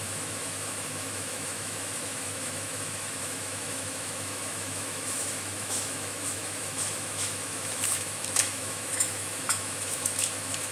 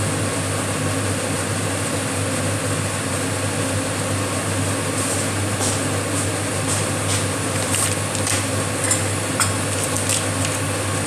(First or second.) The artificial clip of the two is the first